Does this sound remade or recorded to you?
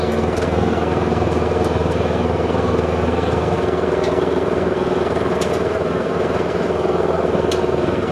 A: remade